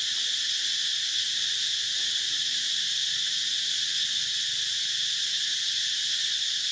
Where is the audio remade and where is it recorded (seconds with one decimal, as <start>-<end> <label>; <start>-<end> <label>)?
0.0-5.5 remade; 5.5-6.3 recorded; 6.3-6.7 remade